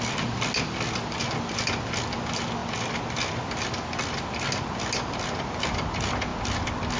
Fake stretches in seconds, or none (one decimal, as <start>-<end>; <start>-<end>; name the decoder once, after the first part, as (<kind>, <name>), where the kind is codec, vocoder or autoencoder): none